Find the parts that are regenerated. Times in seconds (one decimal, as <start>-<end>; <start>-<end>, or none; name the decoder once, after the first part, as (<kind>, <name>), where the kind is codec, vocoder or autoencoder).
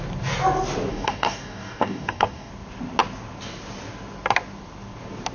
0.9-2.5 (codec, DAC)